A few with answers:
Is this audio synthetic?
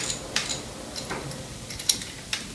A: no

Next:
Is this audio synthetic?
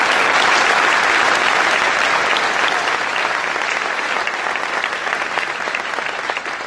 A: no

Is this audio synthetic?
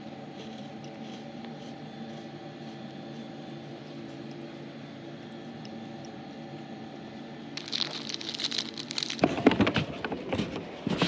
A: yes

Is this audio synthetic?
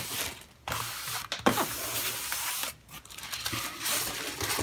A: no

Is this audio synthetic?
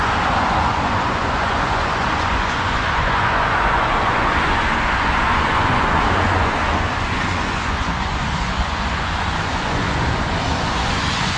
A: yes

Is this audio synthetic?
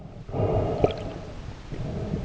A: no